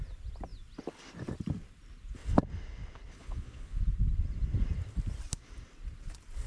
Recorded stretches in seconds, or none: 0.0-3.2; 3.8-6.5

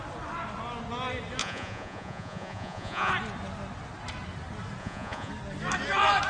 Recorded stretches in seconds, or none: 0.0-1.4; 3.1-4.8; 5.3-6.3

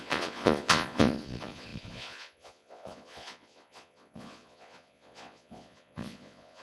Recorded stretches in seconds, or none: none

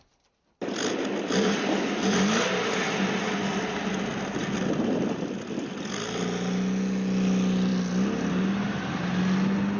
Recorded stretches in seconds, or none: 0.0-9.8

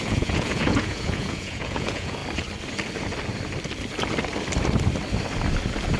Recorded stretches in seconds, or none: 2.2-6.0

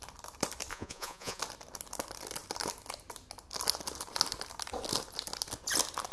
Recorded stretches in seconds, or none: 0.0-0.7; 1.4-6.1

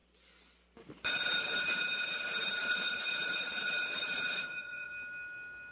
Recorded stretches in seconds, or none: 0.0-2.6; 4.9-5.7

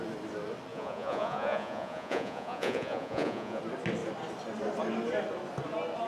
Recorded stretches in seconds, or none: 0.0-0.7; 3.6-6.1